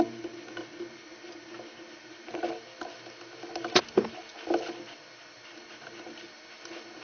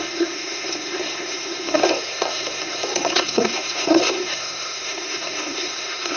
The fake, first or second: second